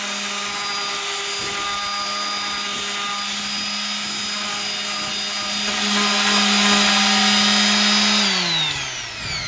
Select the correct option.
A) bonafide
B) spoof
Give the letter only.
A